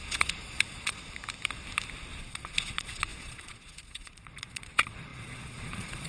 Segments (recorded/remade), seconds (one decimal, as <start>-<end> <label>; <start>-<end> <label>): 0.0-1.0 remade; 1.0-2.2 recorded; 2.2-6.1 remade